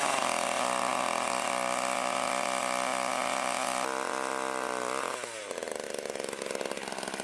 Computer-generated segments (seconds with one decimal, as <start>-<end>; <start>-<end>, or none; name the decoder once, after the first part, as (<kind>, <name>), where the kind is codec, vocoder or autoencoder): none